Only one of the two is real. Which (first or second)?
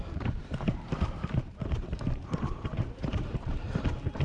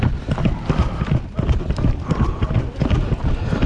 second